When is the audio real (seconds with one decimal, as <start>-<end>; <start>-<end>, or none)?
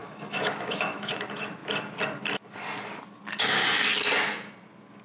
1.1-5.0